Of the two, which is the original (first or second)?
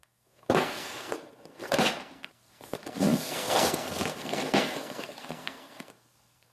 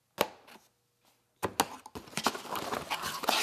second